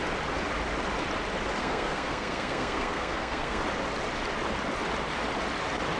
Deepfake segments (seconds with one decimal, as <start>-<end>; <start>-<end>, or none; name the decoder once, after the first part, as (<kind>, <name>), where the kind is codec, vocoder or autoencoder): 1.6-3.6 (codec, SNAC)